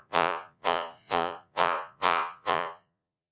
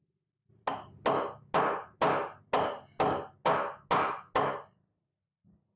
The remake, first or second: first